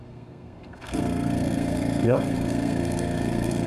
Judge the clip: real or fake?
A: fake